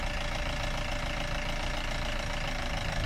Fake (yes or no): no